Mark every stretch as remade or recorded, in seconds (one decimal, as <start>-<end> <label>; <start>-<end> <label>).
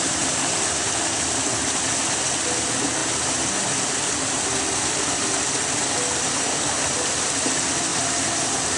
0.0-7.9 recorded; 7.9-8.8 remade